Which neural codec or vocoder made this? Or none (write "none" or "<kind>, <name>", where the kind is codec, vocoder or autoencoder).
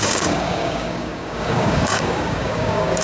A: codec, DAC